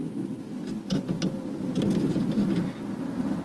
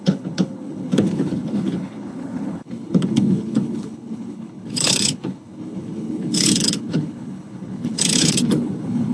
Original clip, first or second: first